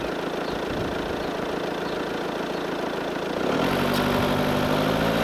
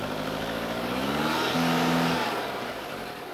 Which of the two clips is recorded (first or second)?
first